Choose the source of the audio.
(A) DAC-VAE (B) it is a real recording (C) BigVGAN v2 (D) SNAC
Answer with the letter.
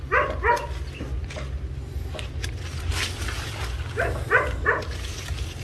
B